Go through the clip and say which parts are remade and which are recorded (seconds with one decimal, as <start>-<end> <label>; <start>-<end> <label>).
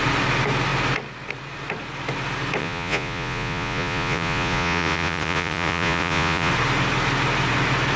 0.0-2.6 recorded; 2.6-6.5 remade; 6.5-8.0 recorded